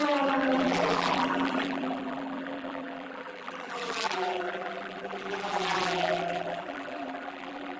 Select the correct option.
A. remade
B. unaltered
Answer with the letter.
A